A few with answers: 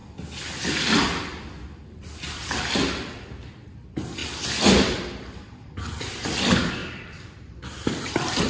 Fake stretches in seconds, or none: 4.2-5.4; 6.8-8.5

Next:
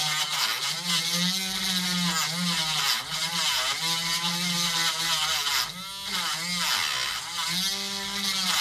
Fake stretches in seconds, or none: none

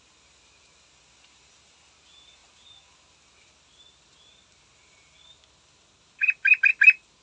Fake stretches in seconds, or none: none

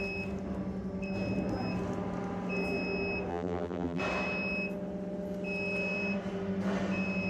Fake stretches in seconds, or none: 3.3-4.0

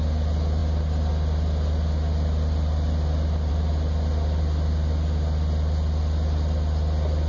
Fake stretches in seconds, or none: none

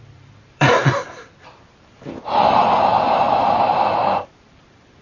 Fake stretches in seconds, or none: 0.0-0.8; 2.0-5.0

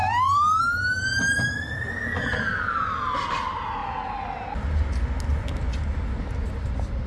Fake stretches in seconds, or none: 0.0-0.6; 1.2-3.0